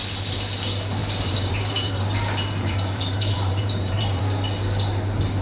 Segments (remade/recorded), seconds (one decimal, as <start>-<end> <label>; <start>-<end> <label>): 0.0-1.0 recorded; 1.0-4.2 remade; 4.2-5.4 recorded